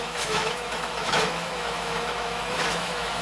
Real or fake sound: fake